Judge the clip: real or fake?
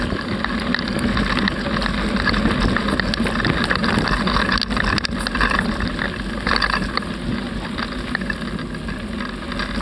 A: real